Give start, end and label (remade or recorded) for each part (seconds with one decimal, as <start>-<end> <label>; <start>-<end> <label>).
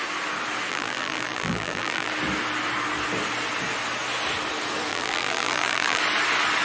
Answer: 0.0-0.7 recorded; 0.7-2.1 remade; 2.1-4.9 recorded; 4.9-6.0 remade; 6.0-6.6 recorded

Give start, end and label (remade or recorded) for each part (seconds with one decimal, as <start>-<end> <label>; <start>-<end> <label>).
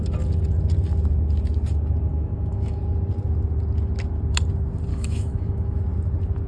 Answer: 0.0-2.1 recorded; 2.1-2.8 remade; 2.8-4.9 recorded; 4.9-5.8 remade; 5.8-6.5 recorded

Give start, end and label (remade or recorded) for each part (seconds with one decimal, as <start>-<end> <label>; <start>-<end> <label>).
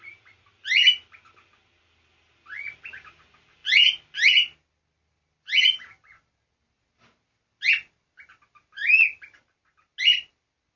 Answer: 0.0-10.8 recorded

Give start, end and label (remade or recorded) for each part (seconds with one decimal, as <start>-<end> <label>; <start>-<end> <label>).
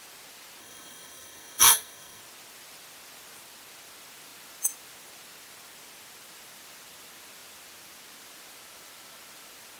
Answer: 0.0-0.6 recorded; 0.6-2.2 remade; 2.2-9.8 recorded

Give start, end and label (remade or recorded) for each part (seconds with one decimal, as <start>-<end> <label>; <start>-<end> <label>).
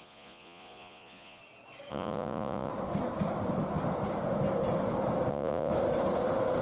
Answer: 0.0-1.4 remade; 1.4-1.9 recorded; 1.9-2.7 remade; 2.7-5.3 recorded; 5.3-5.7 remade; 5.7-6.6 recorded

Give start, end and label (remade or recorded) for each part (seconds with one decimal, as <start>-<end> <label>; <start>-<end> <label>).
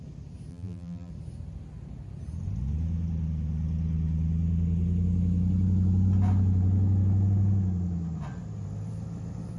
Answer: 0.0-0.5 recorded; 0.5-1.1 remade; 1.1-9.6 recorded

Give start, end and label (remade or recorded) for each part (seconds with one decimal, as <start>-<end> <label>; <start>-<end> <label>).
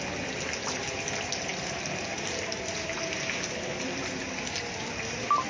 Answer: 0.0-5.5 recorded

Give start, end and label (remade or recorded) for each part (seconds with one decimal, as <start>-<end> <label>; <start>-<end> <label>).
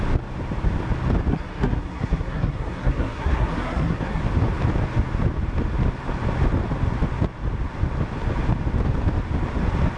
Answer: 0.0-1.3 recorded; 1.3-4.2 remade; 4.2-10.0 recorded